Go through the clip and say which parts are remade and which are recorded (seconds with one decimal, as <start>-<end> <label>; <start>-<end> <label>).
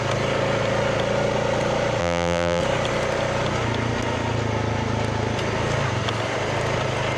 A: 0.0-2.0 recorded; 2.0-2.6 remade; 2.6-7.2 recorded